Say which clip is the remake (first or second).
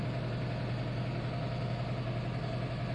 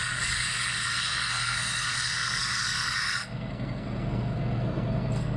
second